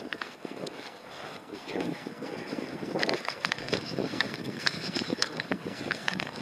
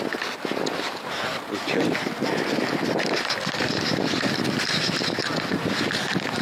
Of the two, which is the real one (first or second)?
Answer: second